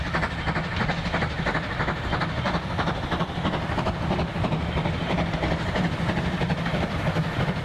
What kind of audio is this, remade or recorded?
remade